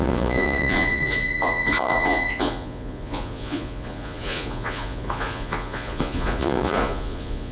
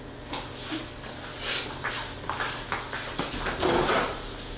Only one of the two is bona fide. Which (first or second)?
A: second